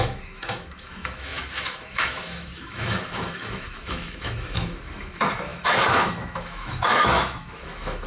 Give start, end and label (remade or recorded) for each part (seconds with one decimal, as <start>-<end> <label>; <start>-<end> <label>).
0.0-8.1 remade